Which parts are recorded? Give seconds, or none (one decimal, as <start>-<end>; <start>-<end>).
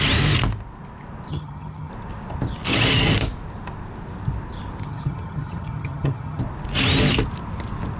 0.0-1.3; 1.9-4.8; 6.4-8.0